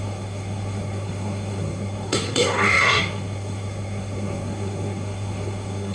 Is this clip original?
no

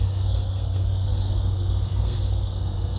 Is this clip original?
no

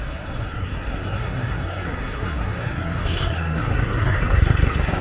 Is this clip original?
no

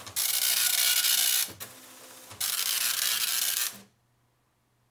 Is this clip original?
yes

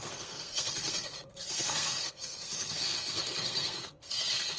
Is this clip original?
no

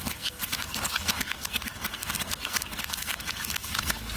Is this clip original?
no